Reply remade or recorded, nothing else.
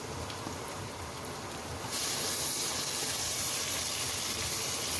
recorded